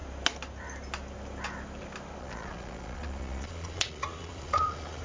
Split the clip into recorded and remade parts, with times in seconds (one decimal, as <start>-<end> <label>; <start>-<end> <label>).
0.0-2.2 recorded; 2.2-5.0 remade